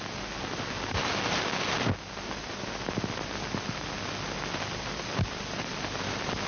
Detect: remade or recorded recorded